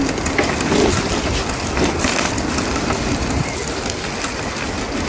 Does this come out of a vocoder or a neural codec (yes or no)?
no